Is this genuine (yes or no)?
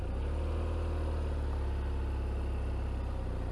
yes